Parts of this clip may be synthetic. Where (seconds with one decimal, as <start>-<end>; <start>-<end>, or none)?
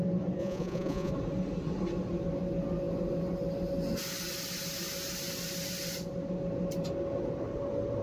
0.4-1.1